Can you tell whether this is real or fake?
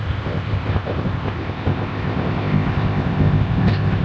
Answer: fake